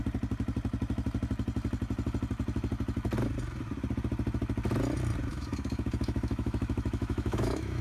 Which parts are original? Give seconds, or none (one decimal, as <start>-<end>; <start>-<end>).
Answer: 0.0-5.3